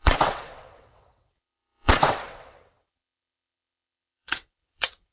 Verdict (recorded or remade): remade